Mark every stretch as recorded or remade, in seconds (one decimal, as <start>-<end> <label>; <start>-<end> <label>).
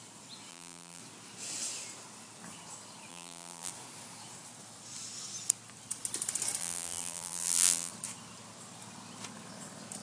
0.0-0.5 recorded; 0.5-1.0 remade; 1.0-3.1 recorded; 3.1-3.7 remade; 3.7-6.6 recorded; 6.6-7.9 remade; 7.9-10.0 recorded